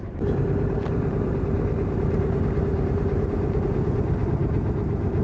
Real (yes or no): no